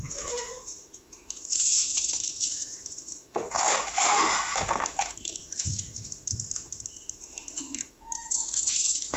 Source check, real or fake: fake